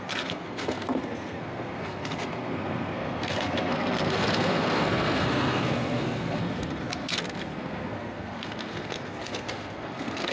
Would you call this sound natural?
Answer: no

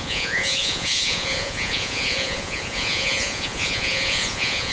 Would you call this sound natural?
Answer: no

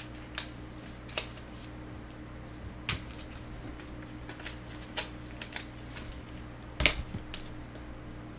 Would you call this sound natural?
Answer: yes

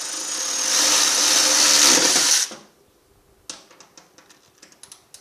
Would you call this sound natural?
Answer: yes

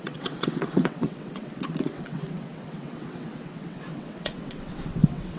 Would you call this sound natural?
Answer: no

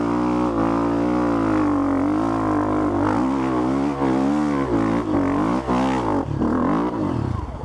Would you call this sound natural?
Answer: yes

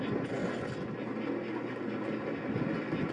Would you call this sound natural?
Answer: yes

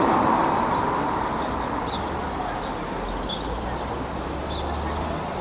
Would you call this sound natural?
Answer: yes